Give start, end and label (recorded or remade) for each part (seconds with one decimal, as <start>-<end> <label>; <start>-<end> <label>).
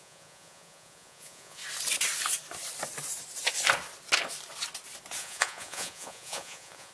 0.0-1.6 remade; 1.6-5.2 recorded; 5.2-6.9 remade